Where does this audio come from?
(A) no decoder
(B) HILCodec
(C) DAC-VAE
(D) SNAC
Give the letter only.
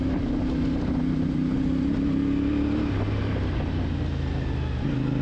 A